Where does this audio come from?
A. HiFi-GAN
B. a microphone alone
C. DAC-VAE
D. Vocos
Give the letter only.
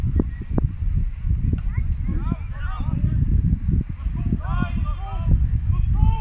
B